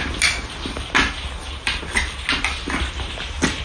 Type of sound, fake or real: real